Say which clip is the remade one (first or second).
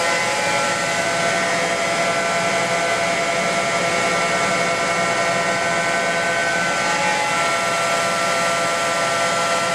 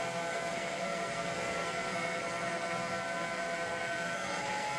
second